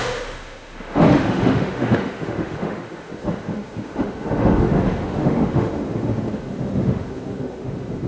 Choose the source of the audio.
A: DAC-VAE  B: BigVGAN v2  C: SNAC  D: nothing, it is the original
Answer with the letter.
A